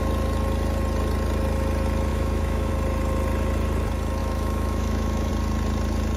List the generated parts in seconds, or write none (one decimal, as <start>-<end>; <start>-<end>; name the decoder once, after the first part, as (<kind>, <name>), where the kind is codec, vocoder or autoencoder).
2.1-2.7 (autoencoder, DAC-VAE); 4.2-5.3